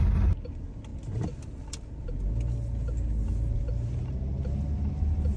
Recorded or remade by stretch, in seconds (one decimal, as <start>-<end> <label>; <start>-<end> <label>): 0.0-5.4 recorded